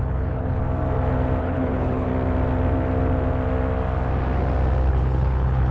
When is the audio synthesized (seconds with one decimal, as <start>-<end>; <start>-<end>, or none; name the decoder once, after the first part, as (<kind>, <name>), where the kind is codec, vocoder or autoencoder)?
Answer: 0.0-0.6 (codec, HILCodec); 1.4-2.1; 4.9-5.7

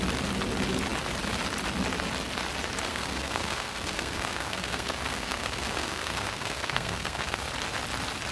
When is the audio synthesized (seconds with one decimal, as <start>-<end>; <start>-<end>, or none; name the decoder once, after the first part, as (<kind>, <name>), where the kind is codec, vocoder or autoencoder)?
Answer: 2.9-7.5 (codec, SNAC)

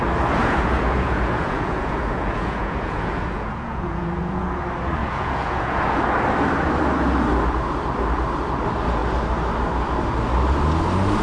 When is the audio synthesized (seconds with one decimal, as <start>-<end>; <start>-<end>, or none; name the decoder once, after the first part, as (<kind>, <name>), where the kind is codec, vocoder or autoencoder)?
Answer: 0.4-4.6 (vocoder, Vocos); 5.0-6.0

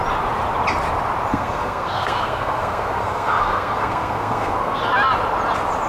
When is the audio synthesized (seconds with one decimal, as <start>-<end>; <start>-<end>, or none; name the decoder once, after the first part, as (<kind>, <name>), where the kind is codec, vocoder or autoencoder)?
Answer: 1.3-4.8 (codec, SNAC)

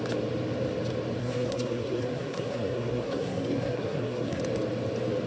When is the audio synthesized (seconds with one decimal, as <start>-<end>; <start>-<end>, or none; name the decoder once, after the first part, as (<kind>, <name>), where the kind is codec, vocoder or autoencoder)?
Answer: 1.2-4.4 (codec, SNAC)

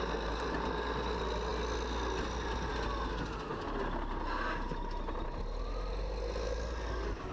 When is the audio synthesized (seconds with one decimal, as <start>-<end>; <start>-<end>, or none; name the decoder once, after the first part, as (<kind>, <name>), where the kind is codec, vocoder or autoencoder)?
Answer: none

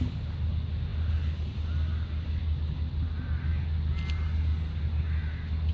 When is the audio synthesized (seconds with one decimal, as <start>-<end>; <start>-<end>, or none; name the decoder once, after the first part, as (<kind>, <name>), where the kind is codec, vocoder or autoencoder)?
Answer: none